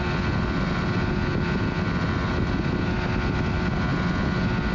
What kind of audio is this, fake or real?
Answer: real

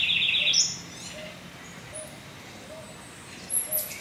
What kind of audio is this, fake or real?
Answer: real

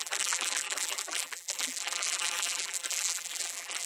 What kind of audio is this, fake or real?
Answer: fake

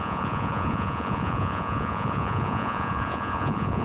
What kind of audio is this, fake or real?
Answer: fake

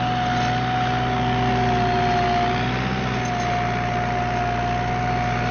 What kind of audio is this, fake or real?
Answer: real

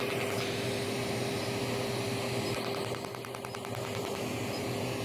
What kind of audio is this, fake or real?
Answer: real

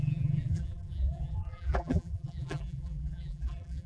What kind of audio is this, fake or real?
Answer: fake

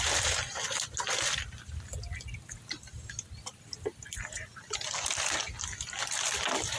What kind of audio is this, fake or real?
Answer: real